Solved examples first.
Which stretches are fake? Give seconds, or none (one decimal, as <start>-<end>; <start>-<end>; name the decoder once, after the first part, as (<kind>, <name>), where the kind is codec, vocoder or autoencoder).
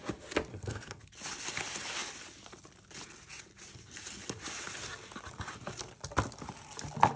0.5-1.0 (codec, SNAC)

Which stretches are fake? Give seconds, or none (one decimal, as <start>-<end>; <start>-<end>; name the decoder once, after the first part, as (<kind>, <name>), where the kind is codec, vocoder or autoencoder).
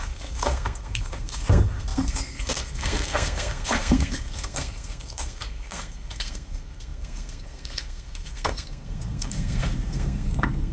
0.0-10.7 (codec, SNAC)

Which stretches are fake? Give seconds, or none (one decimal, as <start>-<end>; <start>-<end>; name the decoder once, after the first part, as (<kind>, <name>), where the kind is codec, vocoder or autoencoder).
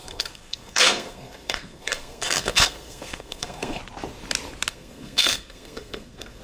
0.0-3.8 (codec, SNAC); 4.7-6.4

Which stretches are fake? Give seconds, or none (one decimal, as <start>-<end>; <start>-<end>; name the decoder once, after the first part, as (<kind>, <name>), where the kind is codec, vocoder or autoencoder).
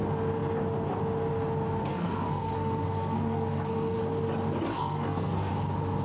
1.9-4.0 (codec, SNAC); 4.7-5.5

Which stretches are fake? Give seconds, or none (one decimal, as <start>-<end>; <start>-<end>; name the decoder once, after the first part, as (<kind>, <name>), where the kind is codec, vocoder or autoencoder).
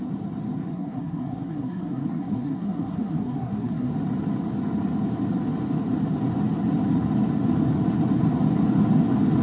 0.7-3.9 (codec, SNAC)